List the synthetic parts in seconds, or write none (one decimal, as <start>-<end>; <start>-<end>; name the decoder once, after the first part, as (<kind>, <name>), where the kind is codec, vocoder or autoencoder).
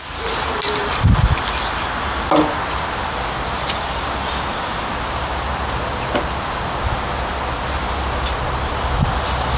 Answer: none